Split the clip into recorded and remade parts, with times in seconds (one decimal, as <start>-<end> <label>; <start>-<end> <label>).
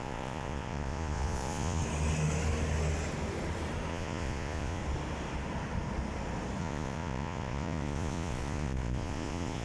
0.0-1.8 remade; 1.8-3.9 recorded; 3.9-4.8 remade; 4.8-6.6 recorded; 6.6-9.6 remade